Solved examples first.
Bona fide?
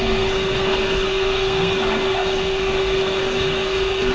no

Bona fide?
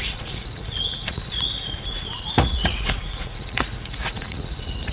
no